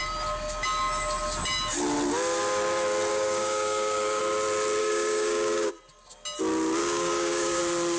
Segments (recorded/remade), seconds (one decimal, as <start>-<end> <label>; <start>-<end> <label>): 0.0-3.1 recorded; 3.1-4.2 remade; 4.2-4.8 recorded; 4.8-5.7 remade; 5.7-6.8 recorded; 6.8-7.6 remade; 7.6-8.0 recorded